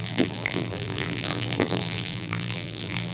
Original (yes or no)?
no